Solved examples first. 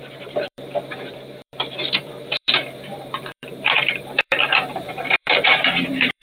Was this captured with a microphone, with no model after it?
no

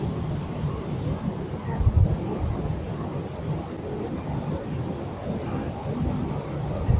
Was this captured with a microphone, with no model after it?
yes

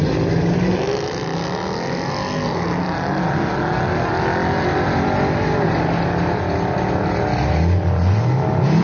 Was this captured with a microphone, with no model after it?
yes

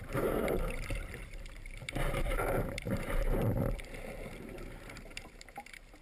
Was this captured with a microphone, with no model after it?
no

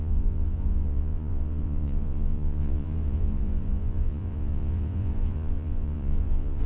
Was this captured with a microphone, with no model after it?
no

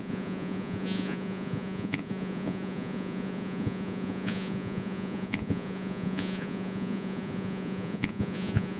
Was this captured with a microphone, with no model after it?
no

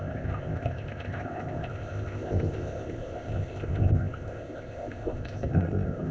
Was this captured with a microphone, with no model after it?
no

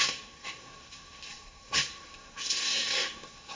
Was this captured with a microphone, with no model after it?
no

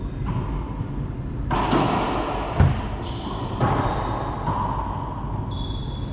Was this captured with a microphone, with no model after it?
yes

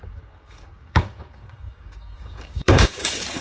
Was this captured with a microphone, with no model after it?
no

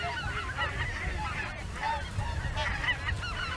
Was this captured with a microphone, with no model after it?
yes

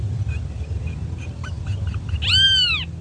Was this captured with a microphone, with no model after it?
yes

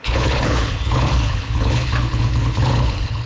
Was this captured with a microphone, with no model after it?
no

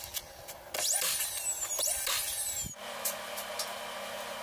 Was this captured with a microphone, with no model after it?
yes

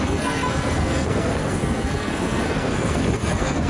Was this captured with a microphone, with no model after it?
no